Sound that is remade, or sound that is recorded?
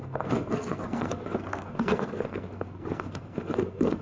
remade